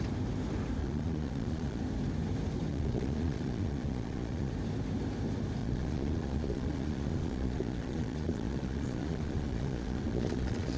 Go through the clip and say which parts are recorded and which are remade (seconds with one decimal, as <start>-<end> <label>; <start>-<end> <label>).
0.0-0.8 recorded; 0.8-1.8 remade; 1.8-2.7 recorded; 2.7-4.5 remade; 4.5-5.6 recorded; 5.6-10.8 remade